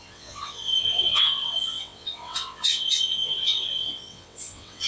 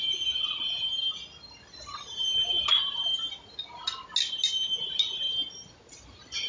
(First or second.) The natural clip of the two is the second